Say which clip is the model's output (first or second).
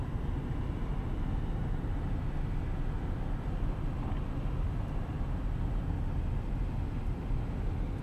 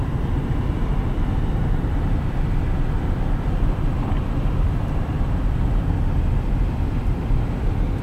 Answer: second